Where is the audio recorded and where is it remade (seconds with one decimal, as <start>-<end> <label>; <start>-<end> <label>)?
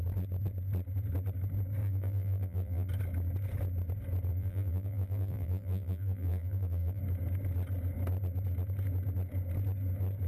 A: 0.0-1.8 recorded; 1.8-2.9 remade; 2.9-4.3 recorded; 4.3-7.0 remade; 7.0-10.3 recorded